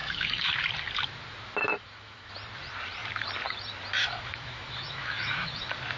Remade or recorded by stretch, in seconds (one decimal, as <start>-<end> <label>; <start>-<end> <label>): 0.0-0.6 remade; 0.6-1.7 recorded; 1.7-2.3 remade; 2.3-4.0 recorded; 4.0-5.6 remade; 5.6-6.0 recorded